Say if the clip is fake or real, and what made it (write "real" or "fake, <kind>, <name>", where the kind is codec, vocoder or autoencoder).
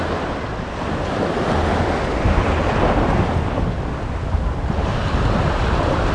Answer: real